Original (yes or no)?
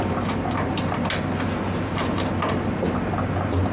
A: yes